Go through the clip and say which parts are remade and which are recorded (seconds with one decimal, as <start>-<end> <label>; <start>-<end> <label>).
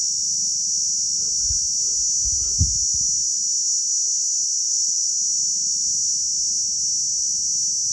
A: 0.0-4.6 recorded; 4.6-5.1 remade; 5.1-7.9 recorded